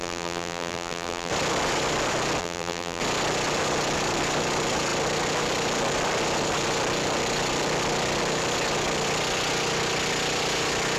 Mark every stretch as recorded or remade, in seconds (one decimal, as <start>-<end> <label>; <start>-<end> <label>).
0.0-1.3 remade; 1.3-2.4 recorded; 2.4-3.0 remade; 3.0-11.0 recorded